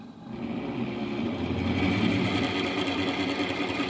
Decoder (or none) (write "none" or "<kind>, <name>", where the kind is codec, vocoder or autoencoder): none